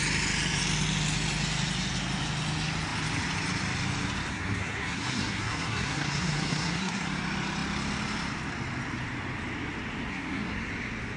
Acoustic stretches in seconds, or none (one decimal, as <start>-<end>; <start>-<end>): 0.0-4.3; 7.1-10.1; 10.7-11.2